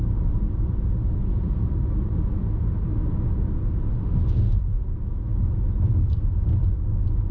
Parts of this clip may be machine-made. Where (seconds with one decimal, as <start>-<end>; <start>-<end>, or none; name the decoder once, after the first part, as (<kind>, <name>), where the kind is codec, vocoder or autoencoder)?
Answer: 3.9-4.6 (autoencoder, DAC-VAE)